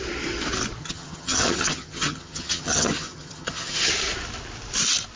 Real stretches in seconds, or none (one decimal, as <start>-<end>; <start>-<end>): 0.0-0.8; 3.9-5.2